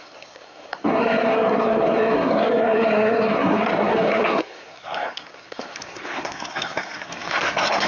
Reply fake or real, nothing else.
fake